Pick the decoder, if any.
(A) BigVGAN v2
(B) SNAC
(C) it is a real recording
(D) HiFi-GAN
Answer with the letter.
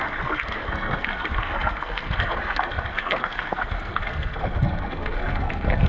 B